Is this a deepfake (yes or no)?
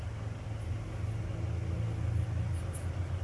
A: no